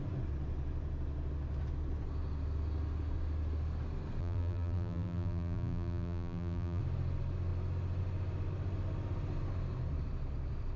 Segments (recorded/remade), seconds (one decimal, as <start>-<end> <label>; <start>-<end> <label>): 0.0-4.2 recorded; 4.2-6.8 remade; 6.8-10.8 recorded

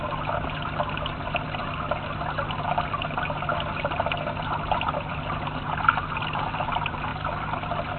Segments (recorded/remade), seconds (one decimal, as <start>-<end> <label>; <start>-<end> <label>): 0.0-8.0 recorded

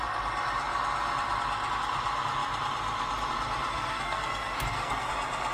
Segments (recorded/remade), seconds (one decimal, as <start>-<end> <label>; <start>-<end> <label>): 0.0-3.7 recorded; 3.7-5.1 remade; 5.1-5.5 recorded

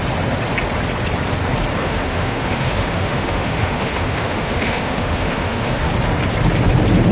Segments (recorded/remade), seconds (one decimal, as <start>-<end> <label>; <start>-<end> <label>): 0.0-1.8 recorded; 1.8-5.9 remade; 5.9-7.1 recorded

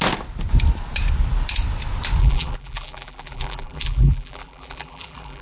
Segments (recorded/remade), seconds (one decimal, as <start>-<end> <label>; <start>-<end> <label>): 0.0-2.2 recorded; 2.2-5.4 remade

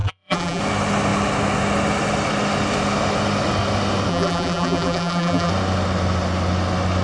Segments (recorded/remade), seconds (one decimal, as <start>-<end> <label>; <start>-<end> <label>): 0.0-0.6 remade; 0.6-4.1 recorded; 4.1-5.5 remade; 5.5-7.0 recorded